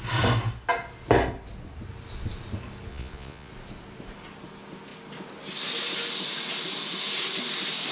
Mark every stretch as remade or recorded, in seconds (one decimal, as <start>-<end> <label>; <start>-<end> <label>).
0.0-2.9 recorded; 2.9-3.5 remade; 3.5-7.9 recorded